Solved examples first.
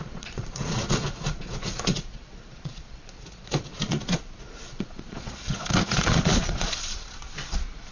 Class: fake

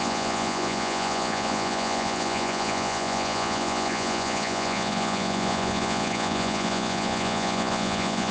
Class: fake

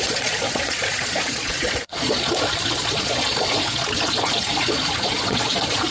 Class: fake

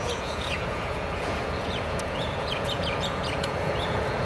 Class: fake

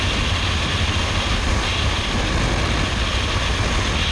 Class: real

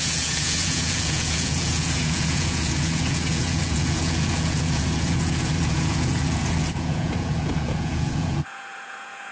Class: fake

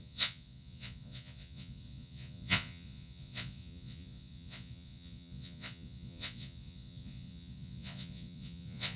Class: fake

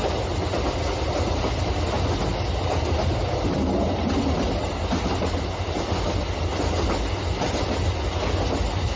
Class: real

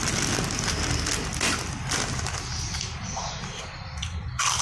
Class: real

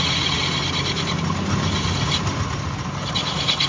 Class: real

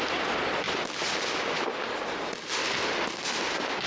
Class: real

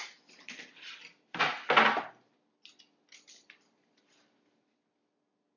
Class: real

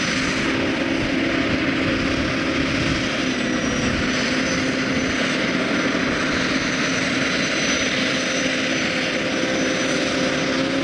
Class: real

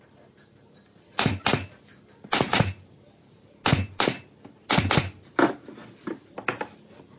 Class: real